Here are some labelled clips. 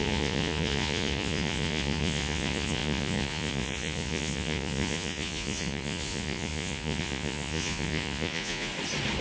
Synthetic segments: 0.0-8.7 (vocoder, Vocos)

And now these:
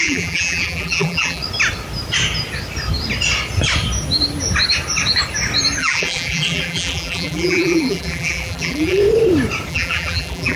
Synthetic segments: 0.0-1.4 (vocoder, BigVGAN v2); 5.8-9.0; 9.7-10.6

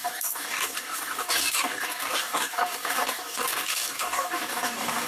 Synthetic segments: 0.0-5.1 (codec, DAC)

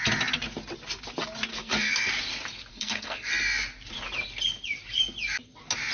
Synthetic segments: 1.5-2.1 (codec, SNAC); 2.7-3.3

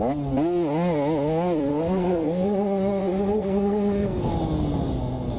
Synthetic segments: 1.7-4.3 (codec, SNAC)

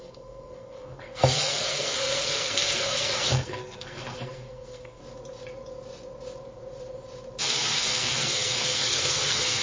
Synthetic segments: 0.0-5.0 (codec, SNAC); 7.4-9.6

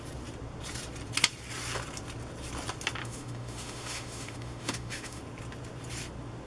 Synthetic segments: 3.0-5.2 (autoencoder, DAC-VAE)